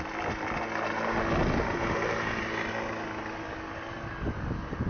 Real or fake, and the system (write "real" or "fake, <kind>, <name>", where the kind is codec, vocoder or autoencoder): real